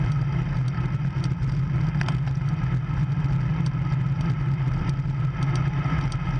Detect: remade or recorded recorded